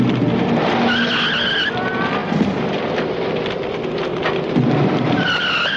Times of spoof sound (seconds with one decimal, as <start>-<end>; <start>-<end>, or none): none